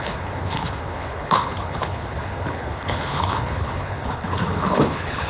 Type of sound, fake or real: fake